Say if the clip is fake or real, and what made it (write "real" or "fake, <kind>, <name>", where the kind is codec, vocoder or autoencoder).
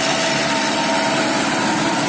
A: real